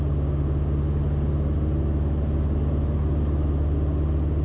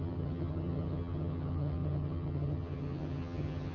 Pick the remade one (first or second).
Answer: second